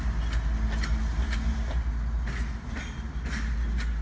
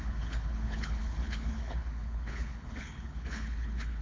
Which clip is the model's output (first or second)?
second